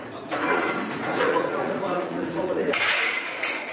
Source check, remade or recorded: remade